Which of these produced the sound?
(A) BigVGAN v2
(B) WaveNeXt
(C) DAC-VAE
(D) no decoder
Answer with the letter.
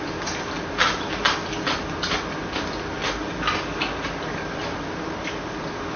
D